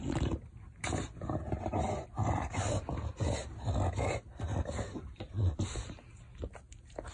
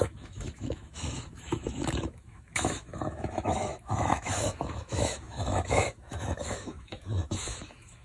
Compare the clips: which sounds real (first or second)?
first